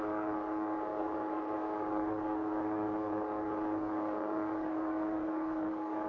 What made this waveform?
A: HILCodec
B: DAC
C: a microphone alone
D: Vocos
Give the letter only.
B